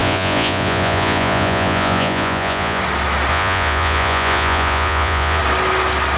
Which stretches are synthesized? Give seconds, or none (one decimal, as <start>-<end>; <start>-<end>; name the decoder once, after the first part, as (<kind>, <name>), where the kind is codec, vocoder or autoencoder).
0.0-2.8 (vocoder, Vocos); 3.3-5.4

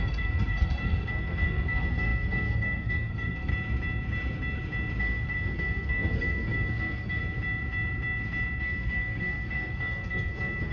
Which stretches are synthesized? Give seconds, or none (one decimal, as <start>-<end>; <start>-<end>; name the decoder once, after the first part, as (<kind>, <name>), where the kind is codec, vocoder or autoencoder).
0.0-3.5 (codec, SNAC); 5.0-7.2; 8.6-10.7

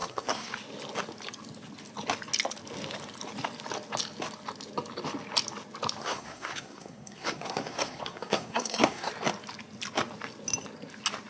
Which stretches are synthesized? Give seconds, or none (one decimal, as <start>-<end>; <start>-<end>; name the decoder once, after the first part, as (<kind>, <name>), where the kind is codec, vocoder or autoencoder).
0.0-0.5 (codec, SNAC); 6.0-9.1

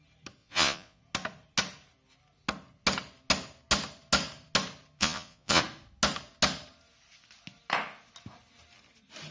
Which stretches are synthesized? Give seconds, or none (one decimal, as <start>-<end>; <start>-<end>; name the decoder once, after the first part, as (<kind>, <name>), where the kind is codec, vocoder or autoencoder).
0.4-1.0 (vocoder, Vocos); 5.0-5.6

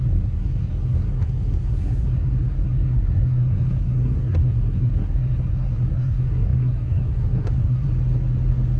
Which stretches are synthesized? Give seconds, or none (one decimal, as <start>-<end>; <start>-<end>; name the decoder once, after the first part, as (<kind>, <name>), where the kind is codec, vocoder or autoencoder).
0.0-7.9 (codec, SNAC)

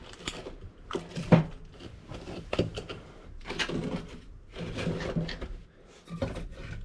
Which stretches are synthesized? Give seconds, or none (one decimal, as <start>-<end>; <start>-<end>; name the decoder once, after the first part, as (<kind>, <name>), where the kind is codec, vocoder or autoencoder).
none

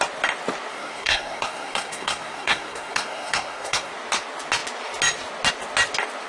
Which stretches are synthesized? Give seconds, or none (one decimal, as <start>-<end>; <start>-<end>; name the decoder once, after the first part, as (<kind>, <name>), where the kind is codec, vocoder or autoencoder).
0.7-3.9 (codec, SNAC)

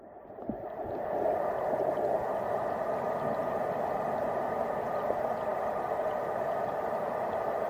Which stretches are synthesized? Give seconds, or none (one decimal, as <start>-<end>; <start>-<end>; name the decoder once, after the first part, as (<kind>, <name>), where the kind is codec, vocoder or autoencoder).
none